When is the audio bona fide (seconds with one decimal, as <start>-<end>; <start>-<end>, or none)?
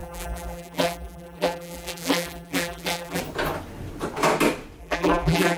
3.2-4.8